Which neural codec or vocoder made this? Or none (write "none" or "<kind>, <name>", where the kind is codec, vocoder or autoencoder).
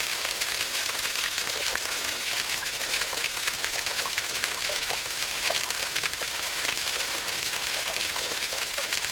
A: autoencoder, DAC-VAE